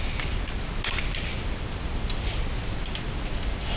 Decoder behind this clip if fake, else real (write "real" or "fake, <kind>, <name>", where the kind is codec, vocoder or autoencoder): real